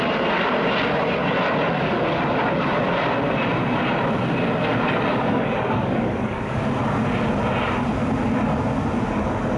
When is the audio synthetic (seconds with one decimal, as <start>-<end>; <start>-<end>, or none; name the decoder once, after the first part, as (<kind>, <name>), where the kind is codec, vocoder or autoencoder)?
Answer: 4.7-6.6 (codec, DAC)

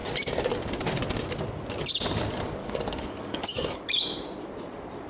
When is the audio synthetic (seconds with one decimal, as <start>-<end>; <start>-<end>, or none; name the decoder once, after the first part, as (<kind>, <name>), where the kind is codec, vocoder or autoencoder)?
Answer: 2.6-3.8 (codec, DAC)

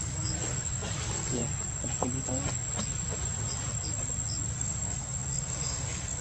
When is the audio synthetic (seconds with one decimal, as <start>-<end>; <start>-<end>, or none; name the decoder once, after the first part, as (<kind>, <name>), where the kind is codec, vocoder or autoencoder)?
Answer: 0.0-1.4 (codec, DAC); 4.4-6.2

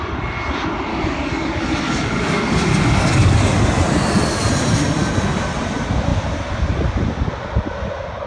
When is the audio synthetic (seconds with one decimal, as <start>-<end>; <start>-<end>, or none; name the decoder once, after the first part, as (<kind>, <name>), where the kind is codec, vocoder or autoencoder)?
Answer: 0.9-3.4 (codec, DAC)

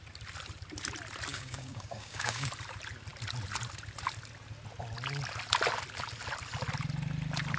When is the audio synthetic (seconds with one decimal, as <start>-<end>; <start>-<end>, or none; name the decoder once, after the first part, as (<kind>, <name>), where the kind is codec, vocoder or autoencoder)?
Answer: 1.3-2.5 (codec, DAC)

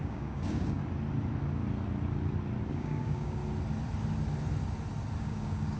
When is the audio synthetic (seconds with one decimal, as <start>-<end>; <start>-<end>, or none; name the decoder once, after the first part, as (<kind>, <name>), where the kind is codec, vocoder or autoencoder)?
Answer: 0.0-0.8 (codec, DAC); 2.7-3.4; 5.2-5.8

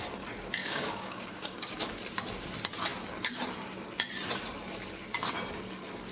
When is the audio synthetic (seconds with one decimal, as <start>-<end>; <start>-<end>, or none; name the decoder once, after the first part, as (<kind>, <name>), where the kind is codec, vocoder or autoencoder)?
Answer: 0.6-2.0 (codec, DAC)